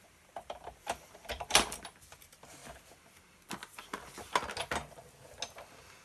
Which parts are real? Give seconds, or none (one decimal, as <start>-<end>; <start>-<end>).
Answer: 2.6-6.0